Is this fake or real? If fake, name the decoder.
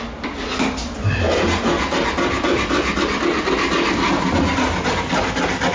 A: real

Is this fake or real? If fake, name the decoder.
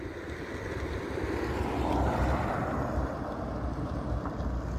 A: real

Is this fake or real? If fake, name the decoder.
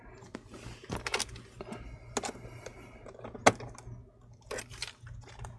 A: real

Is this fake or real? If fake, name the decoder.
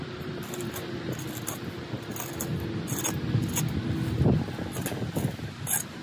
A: real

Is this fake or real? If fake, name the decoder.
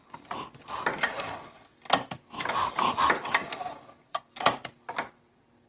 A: real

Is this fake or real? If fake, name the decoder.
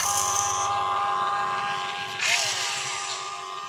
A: real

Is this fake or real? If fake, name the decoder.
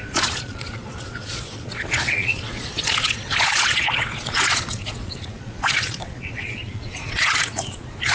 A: fake, vocoder, Vocos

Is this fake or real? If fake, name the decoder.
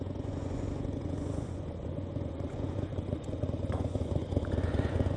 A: fake, vocoder, Vocos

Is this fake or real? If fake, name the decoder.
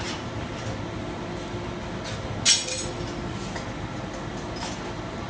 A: real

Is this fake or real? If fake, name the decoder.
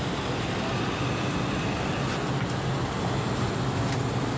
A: real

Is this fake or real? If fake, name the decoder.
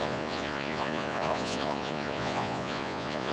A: fake, vocoder, Vocos